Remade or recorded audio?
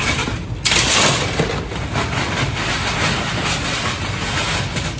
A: recorded